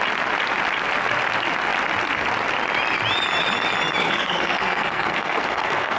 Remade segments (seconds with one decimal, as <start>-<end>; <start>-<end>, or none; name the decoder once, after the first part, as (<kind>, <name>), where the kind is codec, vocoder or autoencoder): 4.0-6.0 (codec, SNAC)